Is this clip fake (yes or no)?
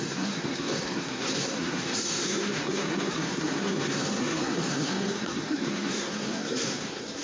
yes